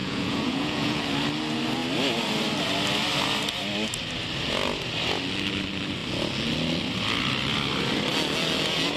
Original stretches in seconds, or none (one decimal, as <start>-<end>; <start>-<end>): 1.0-9.0